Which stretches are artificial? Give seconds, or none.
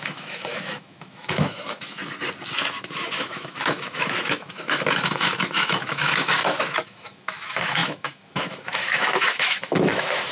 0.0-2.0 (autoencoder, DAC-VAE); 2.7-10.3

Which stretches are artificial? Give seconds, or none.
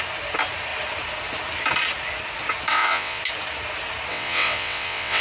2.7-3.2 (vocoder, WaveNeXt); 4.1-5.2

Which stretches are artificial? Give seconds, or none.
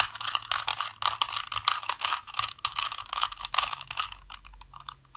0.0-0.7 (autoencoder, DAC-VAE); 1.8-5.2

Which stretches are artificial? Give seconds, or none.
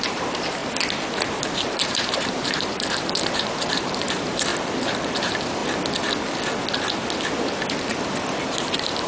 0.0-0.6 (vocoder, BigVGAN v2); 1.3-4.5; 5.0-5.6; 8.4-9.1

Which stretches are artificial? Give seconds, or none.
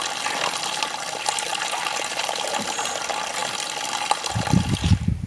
none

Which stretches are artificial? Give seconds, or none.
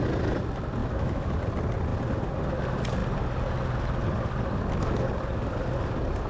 0.8-1.3 (autoencoder, DAC-VAE)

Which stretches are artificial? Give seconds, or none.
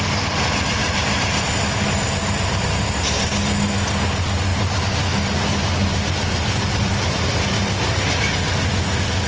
0.8-1.4 (vocoder, BigVGAN v2); 4.5-8.3